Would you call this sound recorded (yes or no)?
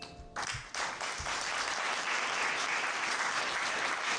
yes